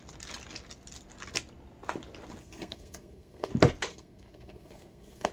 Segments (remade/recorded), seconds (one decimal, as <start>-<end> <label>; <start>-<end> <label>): 0.0-2.4 recorded; 2.4-3.5 remade; 3.5-3.9 recorded; 3.9-5.3 remade